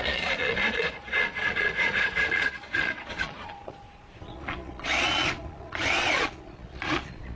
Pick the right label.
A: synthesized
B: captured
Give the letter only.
A